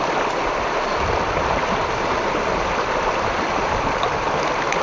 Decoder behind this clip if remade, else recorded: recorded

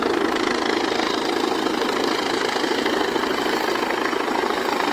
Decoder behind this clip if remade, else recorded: recorded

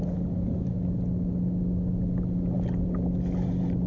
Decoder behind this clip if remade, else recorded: recorded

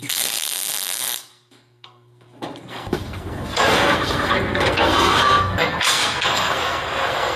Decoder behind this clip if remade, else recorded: remade, codec, SNAC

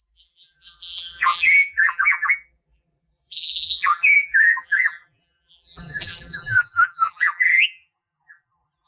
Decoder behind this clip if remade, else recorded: remade, vocoder, BigVGAN v2